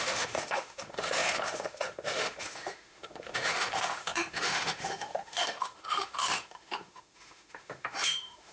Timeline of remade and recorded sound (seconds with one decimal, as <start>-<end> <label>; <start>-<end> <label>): 0.0-8.5 remade